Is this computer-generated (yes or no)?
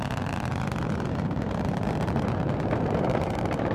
yes